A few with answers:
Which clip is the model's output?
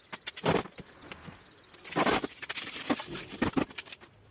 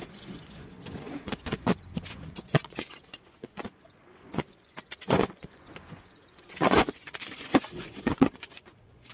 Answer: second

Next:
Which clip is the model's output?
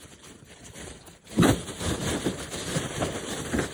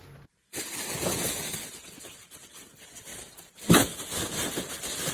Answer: first